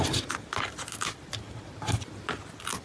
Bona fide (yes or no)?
yes